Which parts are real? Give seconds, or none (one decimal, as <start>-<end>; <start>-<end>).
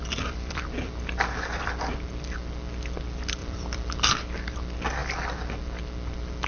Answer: 1.9-3.4; 4.1-6.5